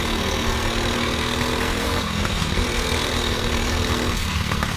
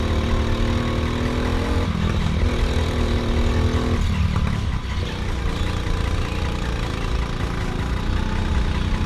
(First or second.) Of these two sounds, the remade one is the first